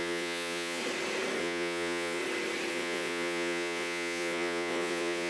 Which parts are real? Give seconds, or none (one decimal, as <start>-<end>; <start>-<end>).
0.8-1.4; 2.2-2.7